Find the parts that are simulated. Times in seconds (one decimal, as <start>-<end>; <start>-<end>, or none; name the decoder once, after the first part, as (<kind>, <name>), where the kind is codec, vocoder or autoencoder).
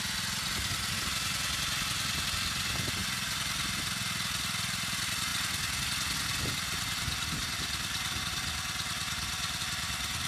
none